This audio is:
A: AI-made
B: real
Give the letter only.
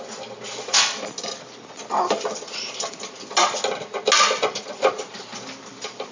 B